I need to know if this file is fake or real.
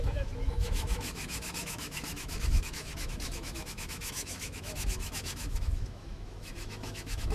fake